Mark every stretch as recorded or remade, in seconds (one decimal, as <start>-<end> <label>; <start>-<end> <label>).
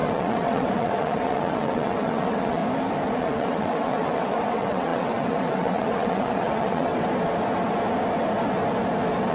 0.0-2.6 remade; 2.6-3.2 recorded; 3.2-6.9 remade; 6.9-9.3 recorded